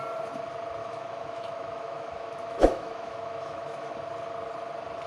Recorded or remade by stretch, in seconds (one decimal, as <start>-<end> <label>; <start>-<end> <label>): 0.0-0.8 recorded; 0.8-3.9 remade; 3.9-5.1 recorded